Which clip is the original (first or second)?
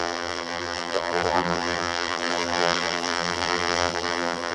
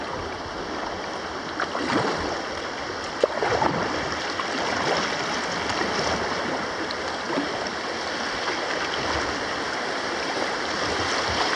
second